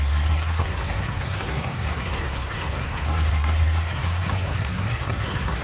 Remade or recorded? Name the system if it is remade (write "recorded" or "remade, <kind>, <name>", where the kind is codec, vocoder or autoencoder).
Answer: remade, codec, SNAC